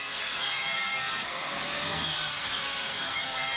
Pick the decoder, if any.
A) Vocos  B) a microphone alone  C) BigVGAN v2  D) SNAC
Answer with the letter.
D